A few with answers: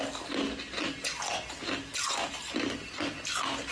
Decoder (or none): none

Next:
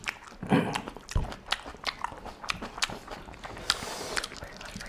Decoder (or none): none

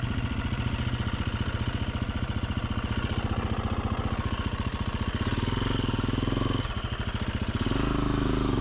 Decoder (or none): none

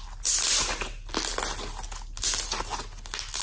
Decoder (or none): none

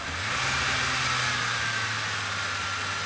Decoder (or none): none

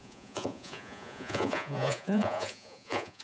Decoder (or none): vocoder, Vocos